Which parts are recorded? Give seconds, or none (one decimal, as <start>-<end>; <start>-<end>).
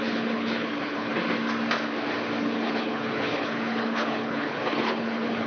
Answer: 1.1-2.4